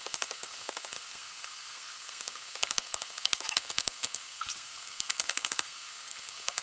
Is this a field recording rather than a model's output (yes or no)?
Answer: no